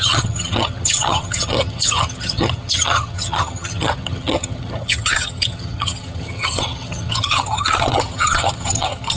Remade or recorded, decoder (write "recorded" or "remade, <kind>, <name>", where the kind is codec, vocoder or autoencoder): remade, vocoder, HiFi-GAN